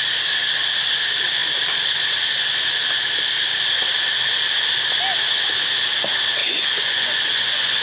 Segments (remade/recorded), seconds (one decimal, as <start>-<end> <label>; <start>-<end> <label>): 0.0-6.4 recorded; 6.4-7.8 remade